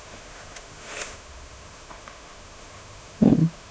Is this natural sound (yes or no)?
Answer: no